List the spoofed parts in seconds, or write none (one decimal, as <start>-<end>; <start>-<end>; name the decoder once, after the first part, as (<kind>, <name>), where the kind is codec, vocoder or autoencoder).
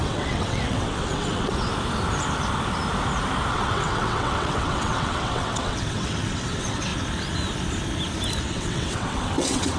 0.0-1.7 (vocoder, WaveNeXt); 3.5-6.9; 8.4-9.8